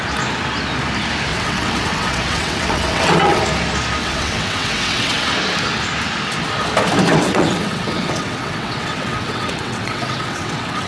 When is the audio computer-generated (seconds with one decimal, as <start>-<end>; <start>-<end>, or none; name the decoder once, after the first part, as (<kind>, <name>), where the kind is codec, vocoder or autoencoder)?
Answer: 1.3-3.4 (vocoder, WaveNeXt); 4.0-5.3; 7.1-10.9

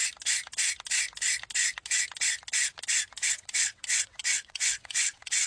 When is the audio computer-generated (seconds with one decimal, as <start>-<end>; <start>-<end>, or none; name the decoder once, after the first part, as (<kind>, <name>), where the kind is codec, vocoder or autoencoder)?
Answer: 3.3-5.5 (vocoder, WaveNeXt)